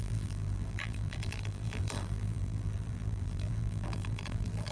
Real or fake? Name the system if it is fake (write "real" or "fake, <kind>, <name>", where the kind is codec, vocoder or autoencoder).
fake, vocoder, BigVGAN v2